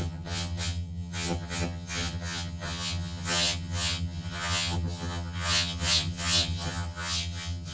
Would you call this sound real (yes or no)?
no